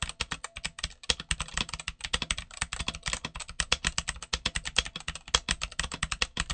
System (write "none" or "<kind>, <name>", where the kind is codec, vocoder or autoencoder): none